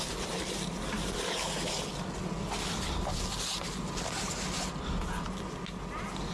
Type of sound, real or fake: real